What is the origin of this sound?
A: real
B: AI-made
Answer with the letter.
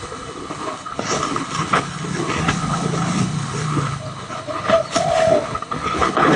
B